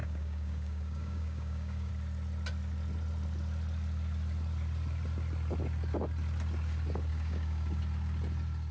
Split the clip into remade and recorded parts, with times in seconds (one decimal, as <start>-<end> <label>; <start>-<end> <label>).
0.0-1.9 remade; 1.9-7.1 recorded; 7.1-7.8 remade; 7.8-8.7 recorded